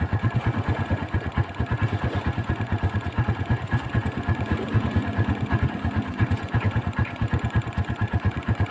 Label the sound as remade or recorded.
remade